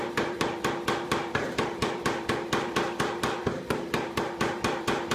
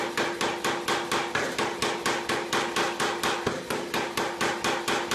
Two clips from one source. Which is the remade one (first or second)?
first